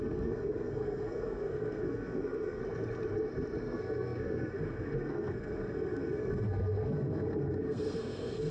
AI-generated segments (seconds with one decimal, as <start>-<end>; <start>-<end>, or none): 0.0-2.6; 3.6-8.5